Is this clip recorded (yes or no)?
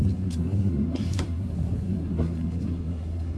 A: no